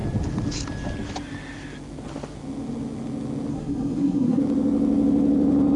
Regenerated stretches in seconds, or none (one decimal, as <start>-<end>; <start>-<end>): 3.5-4.4